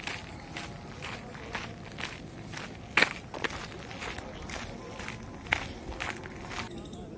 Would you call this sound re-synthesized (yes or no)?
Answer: no